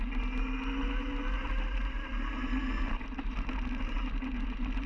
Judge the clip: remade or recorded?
recorded